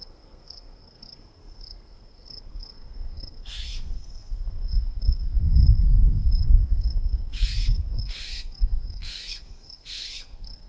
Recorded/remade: remade